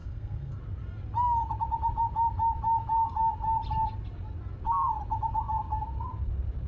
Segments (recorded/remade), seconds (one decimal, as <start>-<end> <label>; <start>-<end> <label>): 0.0-0.6 remade; 0.6-6.7 recorded